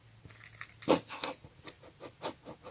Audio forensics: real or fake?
real